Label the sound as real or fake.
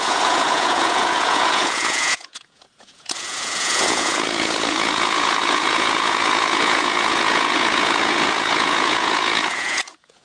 fake